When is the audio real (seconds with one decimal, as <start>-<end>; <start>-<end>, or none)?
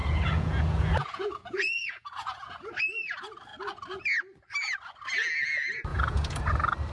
2.7-5.9; 6.4-6.9